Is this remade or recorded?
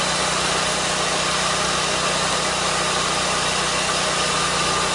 recorded